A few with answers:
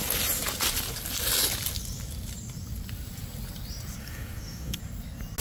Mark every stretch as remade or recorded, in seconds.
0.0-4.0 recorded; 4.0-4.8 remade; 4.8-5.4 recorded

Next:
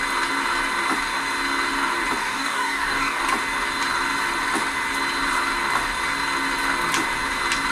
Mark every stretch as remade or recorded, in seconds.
0.0-2.2 recorded; 2.2-3.2 remade; 3.2-7.7 recorded

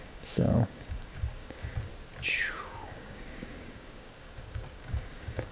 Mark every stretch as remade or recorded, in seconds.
0.0-1.9 remade; 1.9-2.5 recorded; 2.5-5.5 remade

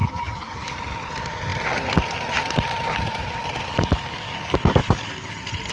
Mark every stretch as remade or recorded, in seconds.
0.0-0.7 remade; 0.7-3.7 recorded; 3.7-5.3 remade; 5.3-5.7 recorded

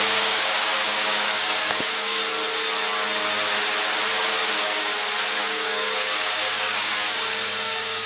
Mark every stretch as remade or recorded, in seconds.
0.0-2.2 remade; 2.2-4.2 recorded; 4.2-4.9 remade; 4.9-5.4 recorded; 5.4-8.1 remade

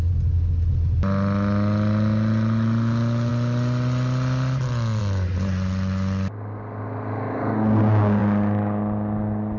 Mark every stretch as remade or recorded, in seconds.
0.0-9.6 recorded

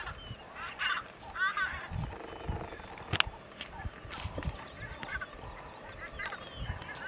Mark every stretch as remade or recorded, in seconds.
0.0-7.1 recorded